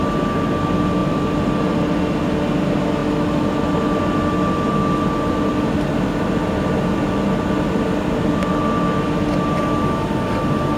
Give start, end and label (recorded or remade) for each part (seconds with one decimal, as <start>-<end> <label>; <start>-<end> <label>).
0.0-10.8 recorded